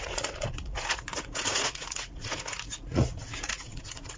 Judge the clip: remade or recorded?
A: remade